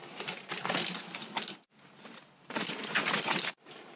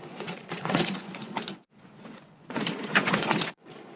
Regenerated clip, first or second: second